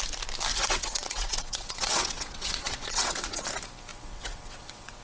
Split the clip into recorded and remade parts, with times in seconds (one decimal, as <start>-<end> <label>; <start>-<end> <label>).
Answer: 0.0-0.5 recorded; 0.5-3.5 remade; 3.5-3.9 recorded; 3.9-5.0 remade